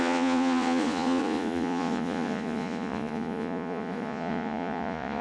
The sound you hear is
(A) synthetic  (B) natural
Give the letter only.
A